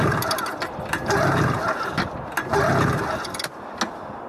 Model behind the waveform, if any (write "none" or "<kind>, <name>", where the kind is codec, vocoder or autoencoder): none